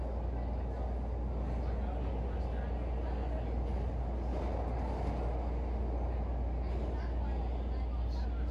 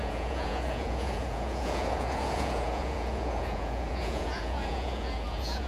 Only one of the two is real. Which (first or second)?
first